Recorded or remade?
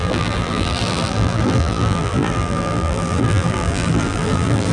remade